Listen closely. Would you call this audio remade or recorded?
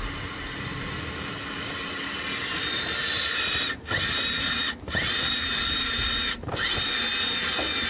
recorded